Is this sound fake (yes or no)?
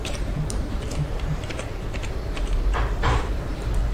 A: yes